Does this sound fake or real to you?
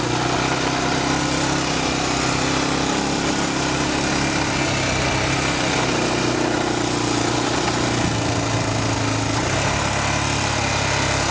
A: real